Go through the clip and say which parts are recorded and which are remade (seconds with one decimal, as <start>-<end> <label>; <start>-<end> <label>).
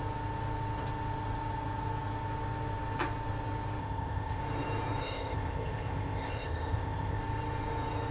0.0-3.8 recorded; 3.8-4.4 remade; 4.4-5.0 recorded; 5.0-7.2 remade; 7.2-8.1 recorded